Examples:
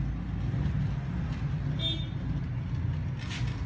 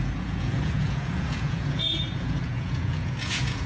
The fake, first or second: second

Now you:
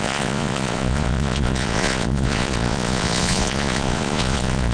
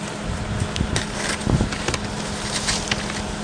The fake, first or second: first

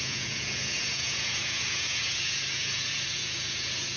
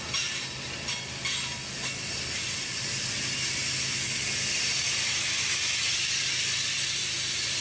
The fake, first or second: first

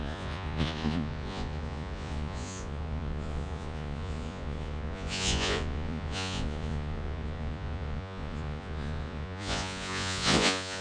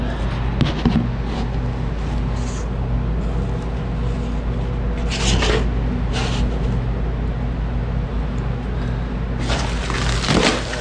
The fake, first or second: first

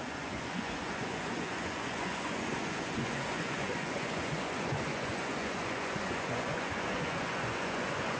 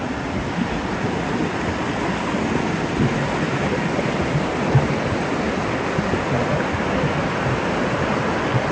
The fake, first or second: first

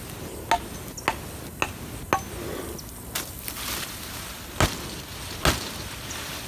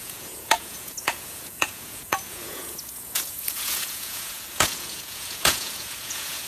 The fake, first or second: second